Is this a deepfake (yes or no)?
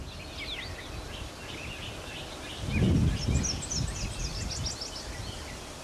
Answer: no